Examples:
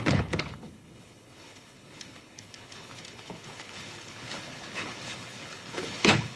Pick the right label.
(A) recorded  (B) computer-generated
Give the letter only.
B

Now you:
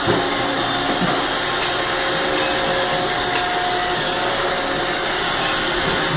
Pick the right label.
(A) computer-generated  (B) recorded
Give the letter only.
B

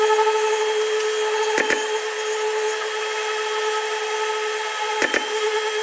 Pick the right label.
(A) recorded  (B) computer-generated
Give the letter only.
A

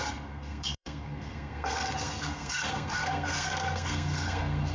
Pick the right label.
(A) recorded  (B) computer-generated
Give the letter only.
B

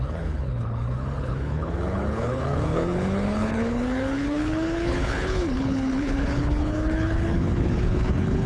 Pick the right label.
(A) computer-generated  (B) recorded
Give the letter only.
A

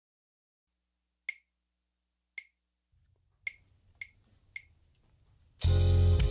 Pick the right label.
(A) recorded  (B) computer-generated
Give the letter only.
A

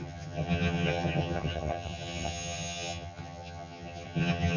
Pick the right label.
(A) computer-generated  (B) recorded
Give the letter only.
A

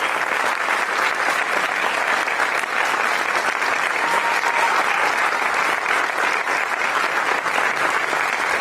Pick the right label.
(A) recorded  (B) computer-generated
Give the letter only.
A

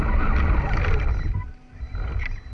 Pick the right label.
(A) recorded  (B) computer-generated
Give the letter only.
A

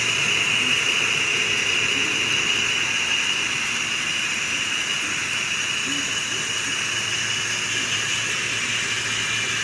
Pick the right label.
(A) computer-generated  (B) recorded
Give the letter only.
B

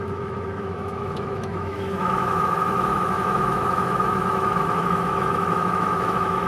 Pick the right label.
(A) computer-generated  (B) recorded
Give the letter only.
A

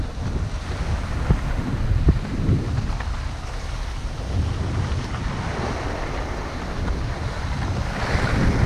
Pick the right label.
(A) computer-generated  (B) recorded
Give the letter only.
B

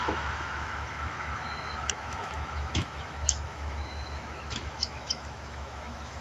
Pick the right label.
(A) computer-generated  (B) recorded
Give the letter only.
A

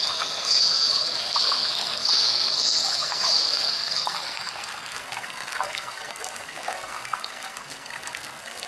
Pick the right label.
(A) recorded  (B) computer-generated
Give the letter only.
B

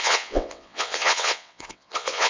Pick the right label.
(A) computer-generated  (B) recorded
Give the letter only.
A